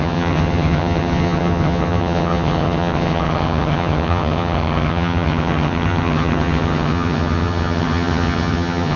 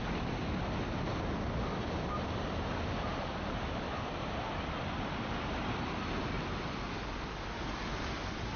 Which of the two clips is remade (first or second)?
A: first